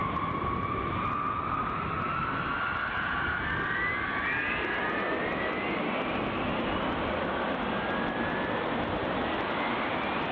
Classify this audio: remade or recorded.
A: recorded